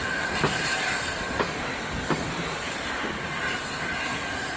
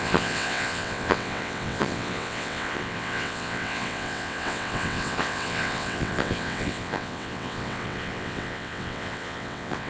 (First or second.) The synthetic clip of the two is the second